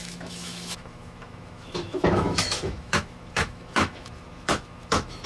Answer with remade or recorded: remade